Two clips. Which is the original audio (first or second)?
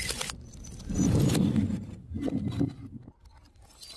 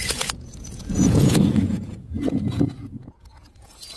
first